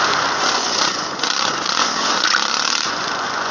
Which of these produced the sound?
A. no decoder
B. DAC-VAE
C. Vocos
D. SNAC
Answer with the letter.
C